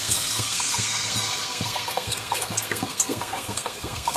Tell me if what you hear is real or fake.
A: fake